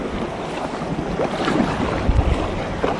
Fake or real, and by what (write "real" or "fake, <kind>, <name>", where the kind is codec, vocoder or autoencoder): real